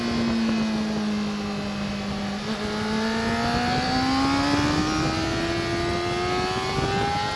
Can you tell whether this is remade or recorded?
recorded